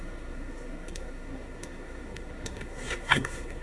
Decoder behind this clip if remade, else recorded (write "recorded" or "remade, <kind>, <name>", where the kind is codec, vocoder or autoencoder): remade, codec, SNAC